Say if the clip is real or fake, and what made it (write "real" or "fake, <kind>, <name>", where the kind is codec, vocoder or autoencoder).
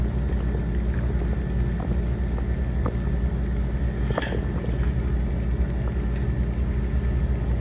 real